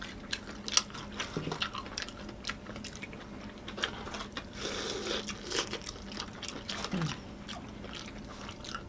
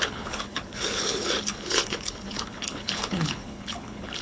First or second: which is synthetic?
second